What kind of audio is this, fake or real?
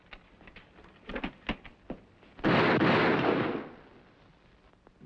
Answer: real